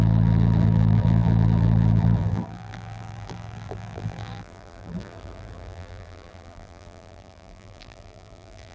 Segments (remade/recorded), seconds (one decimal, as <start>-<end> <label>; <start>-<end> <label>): 0.0-8.7 remade